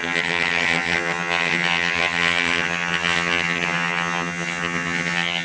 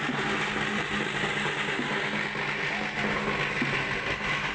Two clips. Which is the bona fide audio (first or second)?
second